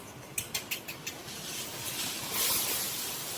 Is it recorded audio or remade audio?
recorded